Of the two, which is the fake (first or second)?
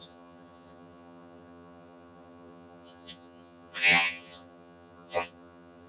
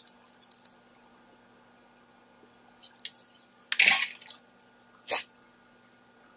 first